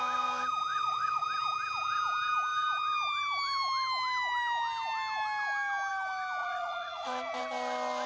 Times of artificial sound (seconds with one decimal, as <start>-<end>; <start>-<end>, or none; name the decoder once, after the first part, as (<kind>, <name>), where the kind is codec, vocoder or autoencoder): 0.7-1.2 (vocoder, Vocos); 6.4-7.4